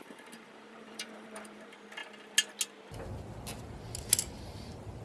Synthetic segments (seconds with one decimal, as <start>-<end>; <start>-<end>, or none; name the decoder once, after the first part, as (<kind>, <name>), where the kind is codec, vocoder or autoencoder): 0.0-2.0 (vocoder, BigVGAN v2)